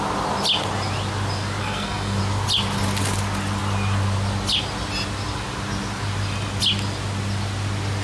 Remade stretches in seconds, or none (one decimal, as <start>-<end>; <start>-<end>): 1.6-2.2